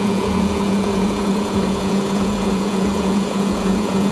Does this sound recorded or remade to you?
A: remade